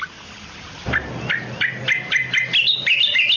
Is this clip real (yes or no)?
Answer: yes